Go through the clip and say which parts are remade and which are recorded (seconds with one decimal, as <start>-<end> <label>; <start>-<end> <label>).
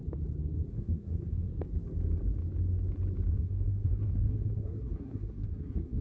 0.0-0.7 recorded; 0.7-1.5 remade; 1.5-3.3 recorded; 3.3-6.0 remade